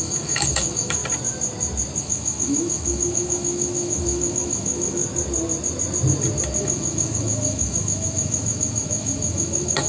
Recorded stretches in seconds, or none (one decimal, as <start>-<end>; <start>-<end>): 1.0-2.0; 5.0-6.6